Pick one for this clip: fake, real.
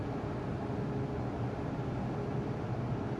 real